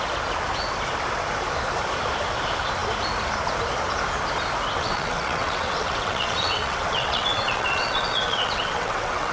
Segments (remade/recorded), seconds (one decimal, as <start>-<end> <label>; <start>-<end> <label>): 0.0-4.8 recorded; 4.8-9.3 remade